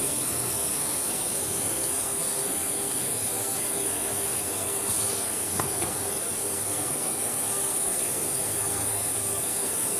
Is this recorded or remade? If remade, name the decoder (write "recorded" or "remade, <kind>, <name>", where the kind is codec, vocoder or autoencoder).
remade, codec, SNAC